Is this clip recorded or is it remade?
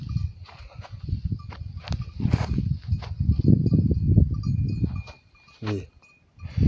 recorded